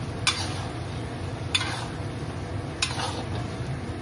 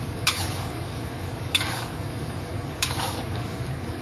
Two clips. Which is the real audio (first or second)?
first